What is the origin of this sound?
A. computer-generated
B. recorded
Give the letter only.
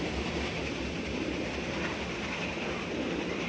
B